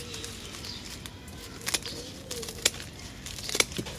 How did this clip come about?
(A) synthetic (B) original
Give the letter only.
B